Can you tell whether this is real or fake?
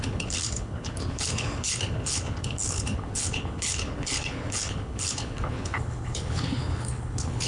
fake